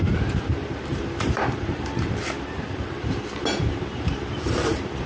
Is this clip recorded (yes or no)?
no